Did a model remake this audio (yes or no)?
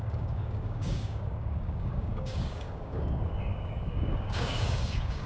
yes